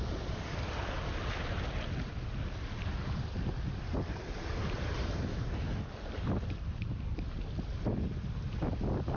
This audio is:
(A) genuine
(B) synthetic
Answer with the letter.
A